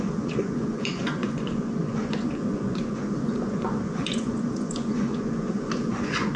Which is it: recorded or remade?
remade